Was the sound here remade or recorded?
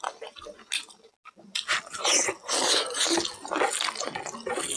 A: recorded